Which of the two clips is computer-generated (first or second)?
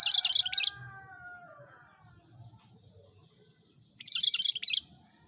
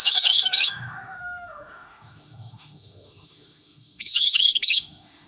second